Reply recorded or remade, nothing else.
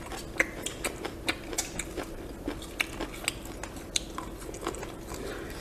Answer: recorded